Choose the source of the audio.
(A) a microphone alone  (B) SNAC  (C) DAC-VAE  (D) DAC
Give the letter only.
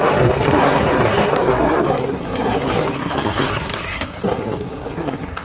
B